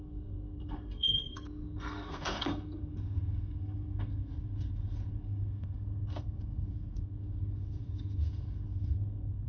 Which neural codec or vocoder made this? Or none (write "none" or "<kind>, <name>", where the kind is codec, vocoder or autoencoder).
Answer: codec, SNAC